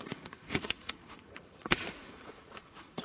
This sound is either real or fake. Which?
fake